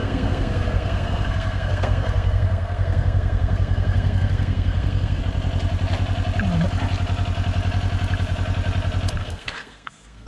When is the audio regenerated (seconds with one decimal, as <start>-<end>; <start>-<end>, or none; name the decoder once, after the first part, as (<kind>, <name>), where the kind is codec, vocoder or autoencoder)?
0.0-5.2 (codec, SNAC); 9.2-10.3